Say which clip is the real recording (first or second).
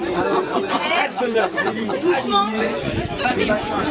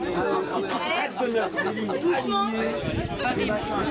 second